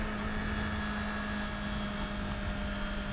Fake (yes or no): no